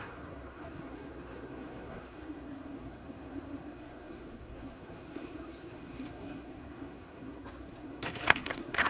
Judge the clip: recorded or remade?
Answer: remade